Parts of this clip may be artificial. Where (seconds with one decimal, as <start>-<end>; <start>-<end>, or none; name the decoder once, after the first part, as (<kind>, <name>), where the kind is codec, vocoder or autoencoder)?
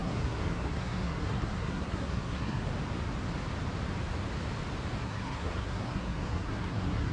0.0-2.7 (codec, SNAC); 5.0-7.1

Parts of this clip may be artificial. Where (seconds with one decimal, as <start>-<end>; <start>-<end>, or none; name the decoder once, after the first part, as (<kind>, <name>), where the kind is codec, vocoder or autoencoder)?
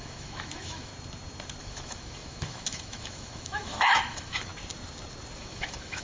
0.0-0.9 (autoencoder, DAC-VAE); 1.6-4.5; 5.4-6.0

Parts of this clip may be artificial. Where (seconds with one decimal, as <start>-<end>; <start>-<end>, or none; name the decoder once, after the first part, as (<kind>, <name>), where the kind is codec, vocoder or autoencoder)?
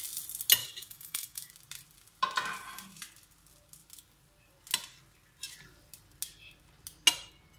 0.6-1.5 (codec, DAC)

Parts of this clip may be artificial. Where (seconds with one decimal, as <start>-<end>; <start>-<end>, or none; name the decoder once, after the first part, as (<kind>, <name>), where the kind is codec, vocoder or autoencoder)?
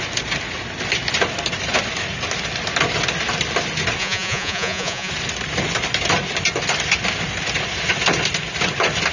4.0-5.1 (vocoder, Vocos)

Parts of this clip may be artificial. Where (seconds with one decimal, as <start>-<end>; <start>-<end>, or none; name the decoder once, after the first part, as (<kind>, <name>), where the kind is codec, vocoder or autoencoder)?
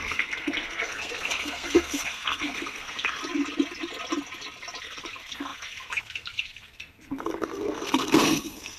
0.0-3.2 (codec, SNAC); 4.8-8.8